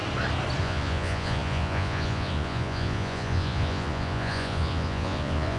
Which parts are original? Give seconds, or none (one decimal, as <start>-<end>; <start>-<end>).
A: 0.0-0.6